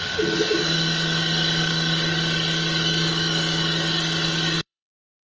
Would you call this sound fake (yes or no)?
yes